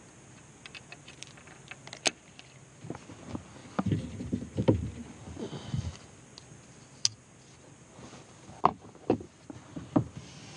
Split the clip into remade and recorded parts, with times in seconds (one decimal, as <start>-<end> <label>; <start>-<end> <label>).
0.0-10.6 recorded